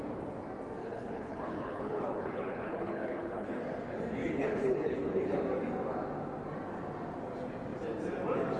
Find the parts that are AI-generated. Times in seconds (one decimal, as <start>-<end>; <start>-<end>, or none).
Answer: 0.8-3.6; 4.2-5.4